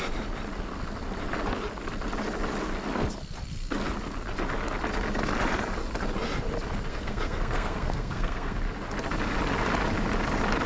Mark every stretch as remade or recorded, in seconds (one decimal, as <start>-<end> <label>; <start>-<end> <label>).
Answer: 0.0-6.9 recorded; 6.9-8.6 remade; 8.6-10.7 recorded